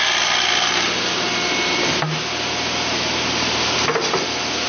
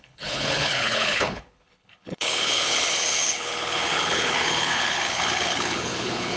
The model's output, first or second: second